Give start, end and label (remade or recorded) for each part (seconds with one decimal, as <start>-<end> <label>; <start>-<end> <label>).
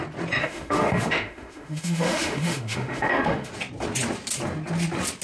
0.0-0.4 recorded; 0.4-3.5 remade; 3.5-5.2 recorded